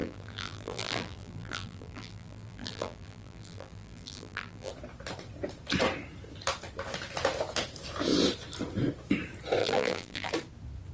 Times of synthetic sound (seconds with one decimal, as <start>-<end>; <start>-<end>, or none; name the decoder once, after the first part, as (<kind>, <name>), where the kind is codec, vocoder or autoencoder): 0.0-4.7 (vocoder, BigVGAN v2); 9.6-10.3